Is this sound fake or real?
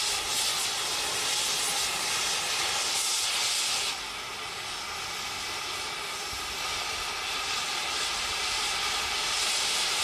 real